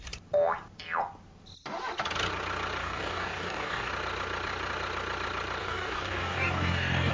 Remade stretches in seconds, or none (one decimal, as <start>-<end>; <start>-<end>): 2.8-3.9; 5.6-7.1